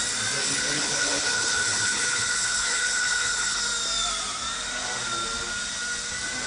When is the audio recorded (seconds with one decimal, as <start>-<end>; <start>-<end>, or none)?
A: 0.0-0.4; 3.6-6.5